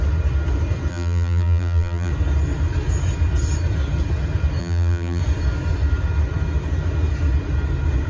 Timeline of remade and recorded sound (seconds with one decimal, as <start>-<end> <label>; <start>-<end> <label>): 0.0-0.9 recorded; 0.9-2.1 remade; 2.1-4.6 recorded; 4.6-5.2 remade; 5.2-8.1 recorded